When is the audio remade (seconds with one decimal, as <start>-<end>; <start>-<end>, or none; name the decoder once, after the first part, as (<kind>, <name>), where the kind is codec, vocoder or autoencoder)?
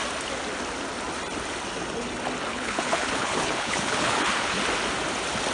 2.5-4.6 (codec, HILCodec)